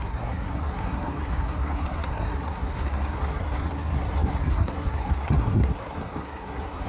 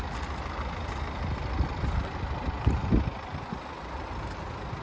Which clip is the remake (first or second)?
first